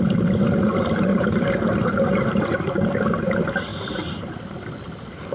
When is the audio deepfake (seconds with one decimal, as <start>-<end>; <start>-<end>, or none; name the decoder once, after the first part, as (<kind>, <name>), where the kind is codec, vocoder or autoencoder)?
1.1-2.7 (vocoder, BigVGAN v2)